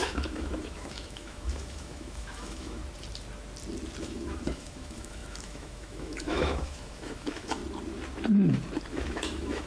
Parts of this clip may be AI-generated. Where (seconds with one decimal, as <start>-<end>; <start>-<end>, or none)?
0.0-2.8; 4.0-7.6; 8.9-9.7